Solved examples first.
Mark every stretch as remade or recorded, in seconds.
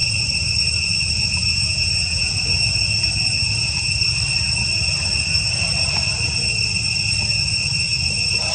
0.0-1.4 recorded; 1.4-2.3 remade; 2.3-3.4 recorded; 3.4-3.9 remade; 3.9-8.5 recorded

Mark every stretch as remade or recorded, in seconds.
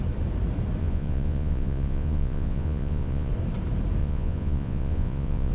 0.0-0.8 recorded; 0.8-3.3 remade; 3.3-4.0 recorded; 4.0-5.5 remade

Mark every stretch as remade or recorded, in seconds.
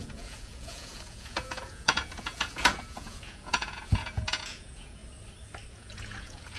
0.0-5.0 remade; 5.0-5.7 recorded; 5.7-6.6 remade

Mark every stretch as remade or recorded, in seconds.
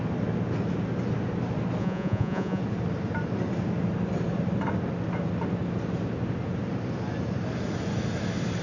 0.0-1.8 recorded; 1.8-2.6 remade; 2.6-8.6 recorded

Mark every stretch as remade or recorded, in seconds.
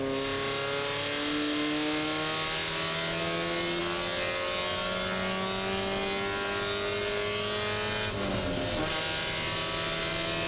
0.0-10.5 recorded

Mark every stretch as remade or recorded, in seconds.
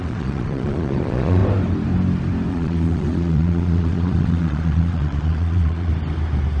0.0-1.4 remade; 1.4-2.5 recorded; 2.5-5.9 remade; 5.9-6.6 recorded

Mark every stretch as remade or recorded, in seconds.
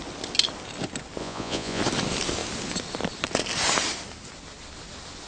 0.0-1.2 recorded; 1.2-1.8 remade; 1.8-5.3 recorded